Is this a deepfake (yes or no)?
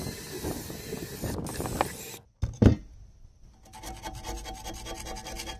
no